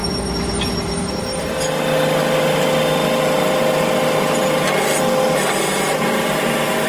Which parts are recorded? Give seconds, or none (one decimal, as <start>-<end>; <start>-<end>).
0.0-6.9